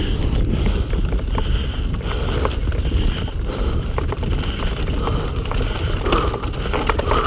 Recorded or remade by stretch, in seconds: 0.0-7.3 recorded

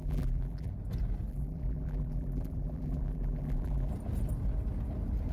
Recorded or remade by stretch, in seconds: 0.0-0.7 remade; 0.7-1.3 recorded; 1.3-3.9 remade; 3.9-5.3 recorded

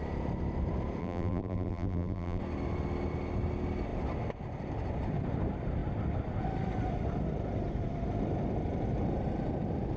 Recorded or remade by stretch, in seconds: 0.0-1.0 recorded; 1.0-2.4 remade; 2.4-10.0 recorded

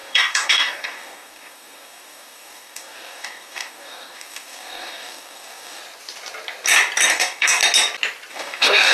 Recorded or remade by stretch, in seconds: 0.0-5.8 remade; 5.8-7.1 recorded; 7.1-7.6 remade; 7.6-8.3 recorded; 8.3-8.9 remade

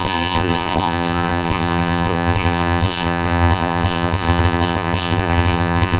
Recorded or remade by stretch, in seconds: 0.0-6.0 remade

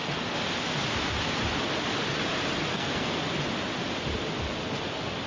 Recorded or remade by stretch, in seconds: 0.0-2.7 recorded; 2.7-3.2 remade; 3.2-5.3 recorded